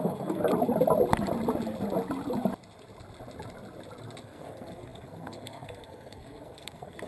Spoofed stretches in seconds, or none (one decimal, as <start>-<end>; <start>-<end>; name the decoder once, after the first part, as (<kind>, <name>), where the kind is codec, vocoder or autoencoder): 0.0-0.4 (codec, SNAC); 4.2-7.1